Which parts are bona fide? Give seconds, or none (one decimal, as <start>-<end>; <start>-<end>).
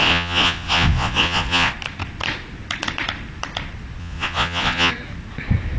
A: 1.7-4.0; 4.9-5.8